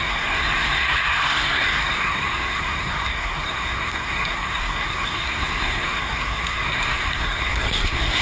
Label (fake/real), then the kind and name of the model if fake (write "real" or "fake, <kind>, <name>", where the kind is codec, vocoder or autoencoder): fake, codec, SNAC